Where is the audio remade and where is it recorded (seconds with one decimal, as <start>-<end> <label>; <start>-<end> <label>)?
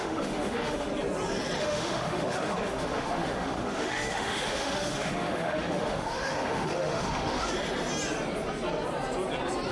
0.0-0.9 remade; 0.9-1.6 recorded; 1.6-7.5 remade; 7.5-9.7 recorded